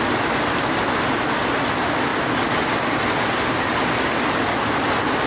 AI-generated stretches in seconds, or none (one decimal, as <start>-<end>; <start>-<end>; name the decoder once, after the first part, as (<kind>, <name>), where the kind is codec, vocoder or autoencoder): none